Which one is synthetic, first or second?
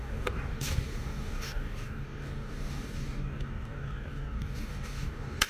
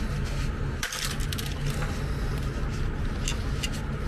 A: first